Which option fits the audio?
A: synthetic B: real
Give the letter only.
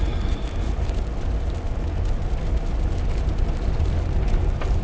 B